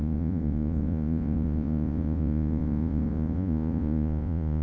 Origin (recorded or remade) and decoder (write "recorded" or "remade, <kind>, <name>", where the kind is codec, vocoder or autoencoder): remade, vocoder, Vocos